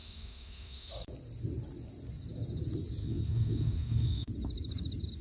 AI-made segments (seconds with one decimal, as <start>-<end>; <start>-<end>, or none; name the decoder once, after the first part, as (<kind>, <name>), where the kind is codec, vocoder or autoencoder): 0.0-0.9 (autoencoder, DAC-VAE); 3.0-4.3